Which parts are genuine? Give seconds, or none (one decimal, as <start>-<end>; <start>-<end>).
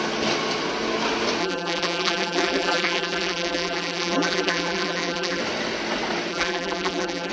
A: 0.0-1.4; 5.4-6.3